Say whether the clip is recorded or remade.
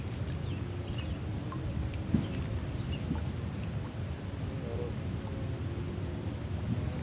recorded